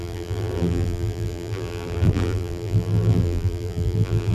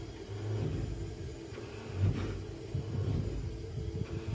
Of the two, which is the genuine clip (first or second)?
second